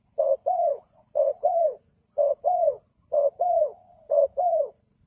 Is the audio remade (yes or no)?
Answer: yes